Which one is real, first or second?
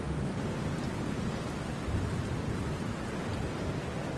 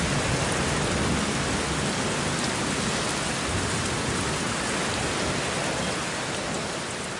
second